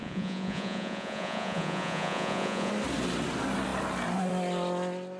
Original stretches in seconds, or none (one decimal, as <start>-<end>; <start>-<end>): 2.7-5.2